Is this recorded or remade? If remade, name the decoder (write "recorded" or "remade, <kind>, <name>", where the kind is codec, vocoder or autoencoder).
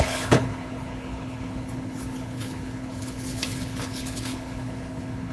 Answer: remade, codec, HILCodec